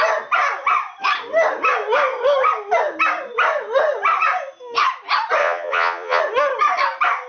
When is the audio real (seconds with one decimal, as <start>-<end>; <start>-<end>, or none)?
0.0-5.4; 6.2-7.3